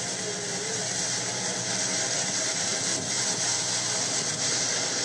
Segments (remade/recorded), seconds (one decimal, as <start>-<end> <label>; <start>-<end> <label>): 0.0-5.0 recorded